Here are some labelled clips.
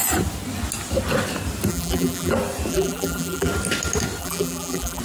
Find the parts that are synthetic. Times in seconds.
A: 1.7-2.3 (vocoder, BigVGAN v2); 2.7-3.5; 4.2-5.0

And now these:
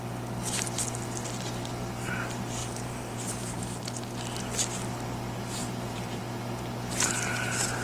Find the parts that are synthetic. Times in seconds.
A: 2.6-3.6 (vocoder, BigVGAN v2); 5.6-6.2

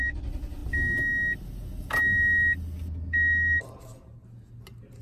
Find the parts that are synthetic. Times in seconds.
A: none

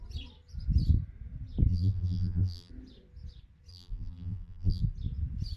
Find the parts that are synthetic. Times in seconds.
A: 1.7-2.7 (vocoder, BigVGAN v2); 3.7-4.8

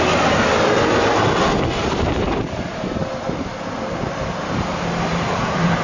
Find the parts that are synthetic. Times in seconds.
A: 0.0-0.9 (vocoder, BigVGAN v2); 1.8-3.0; 5.1-5.8

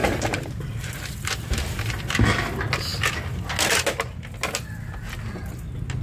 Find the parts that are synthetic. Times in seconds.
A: 0.0-2.0 (vocoder, BigVGAN v2)

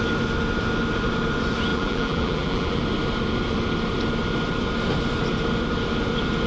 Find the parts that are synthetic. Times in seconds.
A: 1.7-2.8 (vocoder, BigVGAN v2)